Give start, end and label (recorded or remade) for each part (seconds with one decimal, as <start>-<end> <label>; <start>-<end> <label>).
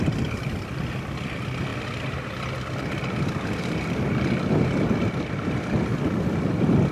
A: 0.0-6.9 recorded